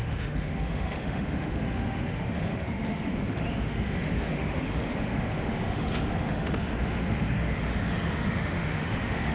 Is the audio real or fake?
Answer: fake